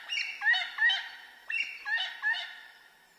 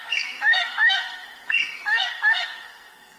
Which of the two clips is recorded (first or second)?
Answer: first